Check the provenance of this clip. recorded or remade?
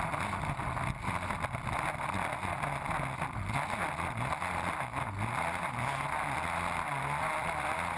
recorded